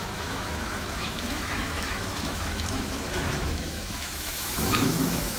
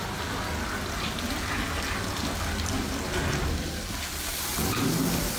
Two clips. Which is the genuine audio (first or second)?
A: second